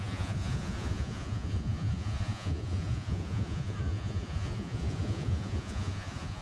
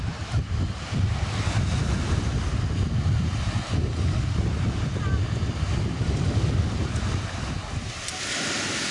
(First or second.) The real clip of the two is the second